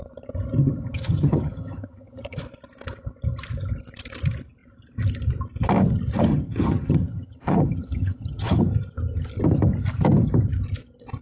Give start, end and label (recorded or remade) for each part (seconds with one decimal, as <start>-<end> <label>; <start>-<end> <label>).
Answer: 0.0-0.6 recorded; 0.6-2.4 remade; 2.4-6.3 recorded; 6.3-8.6 remade; 8.6-11.2 recorded